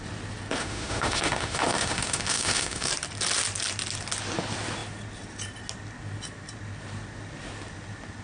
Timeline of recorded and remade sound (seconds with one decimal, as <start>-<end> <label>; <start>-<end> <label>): 0.0-0.6 recorded; 0.6-2.9 remade; 2.9-8.2 recorded